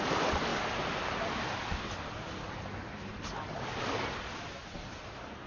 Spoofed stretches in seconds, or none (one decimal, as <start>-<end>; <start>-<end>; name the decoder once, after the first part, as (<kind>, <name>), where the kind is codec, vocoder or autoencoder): 0.0-0.5 (vocoder, BigVGAN v2); 3.8-5.5